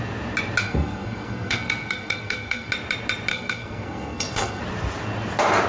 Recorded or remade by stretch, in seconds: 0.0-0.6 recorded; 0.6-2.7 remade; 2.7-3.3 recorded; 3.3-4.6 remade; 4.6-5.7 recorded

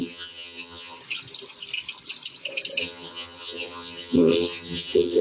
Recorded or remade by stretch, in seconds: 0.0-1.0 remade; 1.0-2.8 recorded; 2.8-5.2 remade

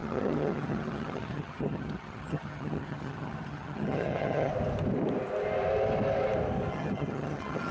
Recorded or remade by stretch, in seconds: 0.0-4.5 remade; 4.5-6.7 recorded; 6.7-7.7 remade

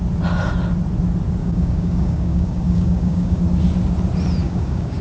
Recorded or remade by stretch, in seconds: 0.0-1.4 recorded; 1.4-3.4 remade; 3.4-4.4 recorded; 4.4-5.0 remade

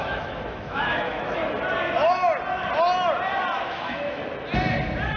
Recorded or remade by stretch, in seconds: 0.0-1.4 remade; 1.4-3.6 recorded; 3.6-4.2 remade; 4.2-5.2 recorded

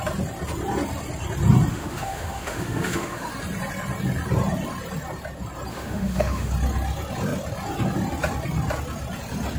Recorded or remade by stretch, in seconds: 0.0-1.7 recorded; 1.7-3.3 remade; 3.3-5.7 recorded; 5.7-6.5 remade; 6.5-9.6 recorded

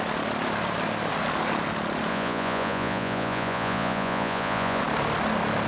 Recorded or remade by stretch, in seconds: 0.0-2.1 recorded; 2.1-4.8 remade; 4.8-5.7 recorded

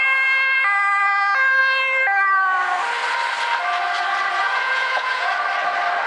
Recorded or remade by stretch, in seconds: 0.0-4.4 recorded; 4.4-5.3 remade; 5.3-6.1 recorded